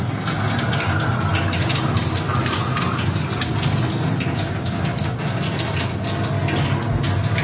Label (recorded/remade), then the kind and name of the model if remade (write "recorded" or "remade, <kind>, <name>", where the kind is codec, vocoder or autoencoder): recorded